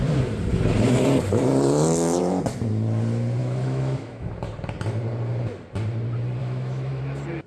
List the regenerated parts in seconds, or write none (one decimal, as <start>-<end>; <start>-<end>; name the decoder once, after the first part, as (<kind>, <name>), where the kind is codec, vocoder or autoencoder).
3.4-4.3 (autoencoder, DAC-VAE); 6.4-7.0